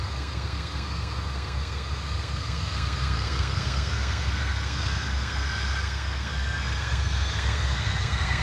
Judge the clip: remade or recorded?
remade